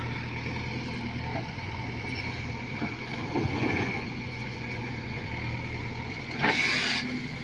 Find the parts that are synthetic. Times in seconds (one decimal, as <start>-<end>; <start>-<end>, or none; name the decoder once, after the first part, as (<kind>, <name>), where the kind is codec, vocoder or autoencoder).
1.3-5.3 (vocoder, Vocos); 5.8-6.7

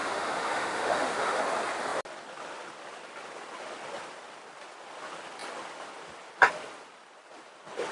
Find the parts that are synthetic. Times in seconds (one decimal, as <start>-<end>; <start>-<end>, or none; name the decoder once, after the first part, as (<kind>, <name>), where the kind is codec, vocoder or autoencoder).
0.0-1.4 (autoencoder, DAC-VAE)

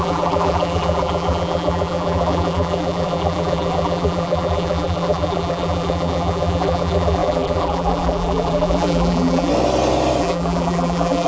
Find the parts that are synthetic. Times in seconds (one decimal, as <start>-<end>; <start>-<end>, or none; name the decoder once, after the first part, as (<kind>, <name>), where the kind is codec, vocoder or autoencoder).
0.0-9.5 (vocoder, BigVGAN v2); 10.2-11.3